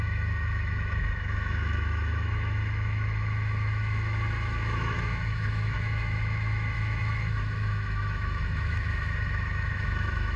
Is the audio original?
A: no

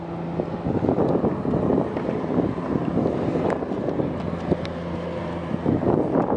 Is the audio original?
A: yes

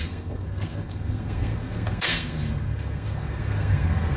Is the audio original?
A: no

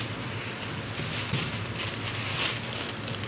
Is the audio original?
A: yes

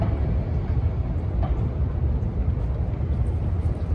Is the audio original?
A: yes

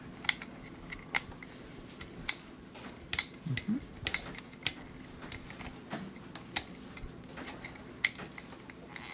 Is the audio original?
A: yes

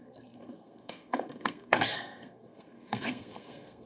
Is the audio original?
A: no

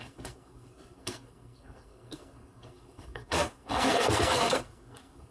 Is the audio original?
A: no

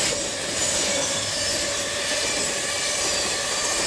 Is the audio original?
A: yes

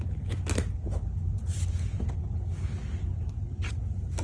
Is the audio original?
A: yes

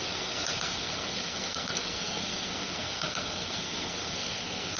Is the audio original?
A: no